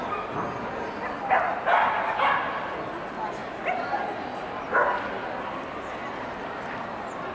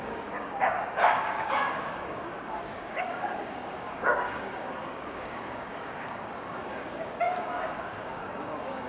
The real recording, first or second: first